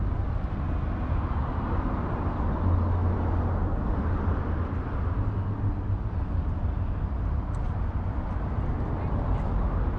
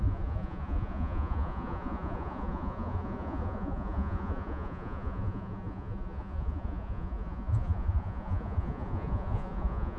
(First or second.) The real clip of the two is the first